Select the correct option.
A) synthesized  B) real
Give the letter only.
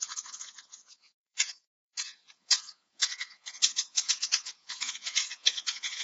A